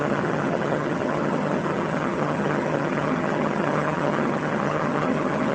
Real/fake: fake